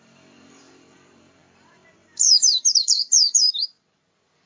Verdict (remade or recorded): remade